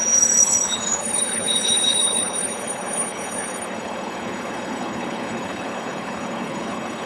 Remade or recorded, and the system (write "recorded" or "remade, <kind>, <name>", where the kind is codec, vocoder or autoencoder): remade, codec, HILCodec